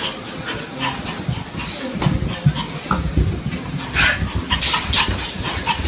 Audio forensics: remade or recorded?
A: recorded